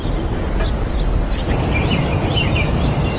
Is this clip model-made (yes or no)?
no